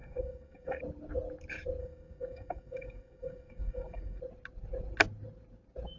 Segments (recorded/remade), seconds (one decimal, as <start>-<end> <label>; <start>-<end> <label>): 0.0-0.8 remade; 0.8-1.8 recorded; 1.8-4.2 remade; 4.2-6.0 recorded